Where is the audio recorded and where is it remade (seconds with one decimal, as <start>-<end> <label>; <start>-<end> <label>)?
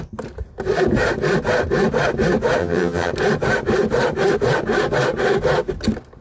0.0-2.6 recorded; 2.6-3.1 remade; 3.1-6.2 recorded